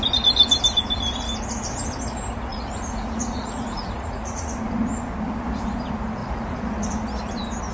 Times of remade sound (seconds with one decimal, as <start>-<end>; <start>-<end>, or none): 2.5-4.5; 6.2-6.9